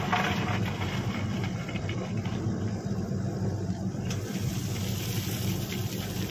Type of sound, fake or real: fake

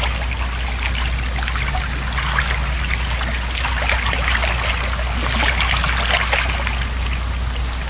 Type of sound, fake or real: real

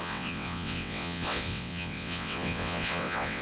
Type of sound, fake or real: fake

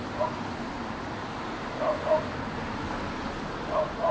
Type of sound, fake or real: real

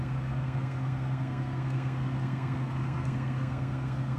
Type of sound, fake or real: fake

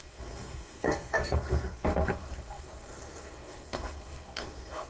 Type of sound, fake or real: fake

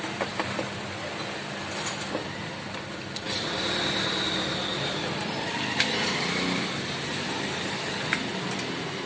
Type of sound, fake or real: real